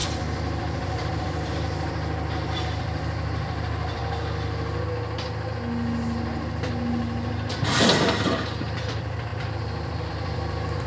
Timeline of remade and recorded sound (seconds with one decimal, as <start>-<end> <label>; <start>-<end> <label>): 0.0-4.0 remade; 4.0-7.5 recorded; 7.5-10.9 remade